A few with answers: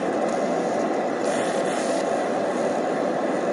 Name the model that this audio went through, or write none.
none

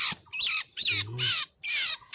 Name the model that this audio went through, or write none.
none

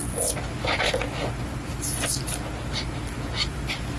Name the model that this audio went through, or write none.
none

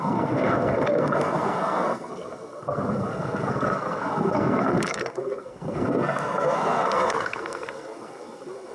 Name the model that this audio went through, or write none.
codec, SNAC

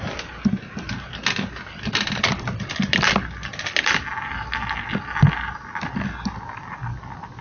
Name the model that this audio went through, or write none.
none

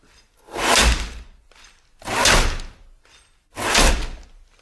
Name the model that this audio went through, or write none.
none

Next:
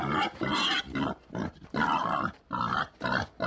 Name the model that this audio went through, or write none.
none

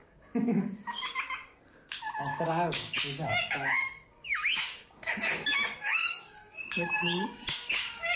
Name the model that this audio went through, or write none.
codec, DAC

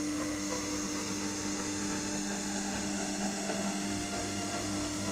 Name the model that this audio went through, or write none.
autoencoder, DAC-VAE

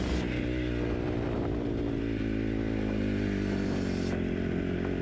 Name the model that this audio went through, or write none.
none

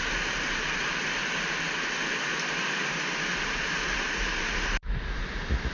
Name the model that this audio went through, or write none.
none